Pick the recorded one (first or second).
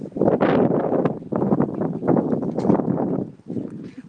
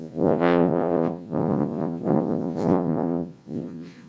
first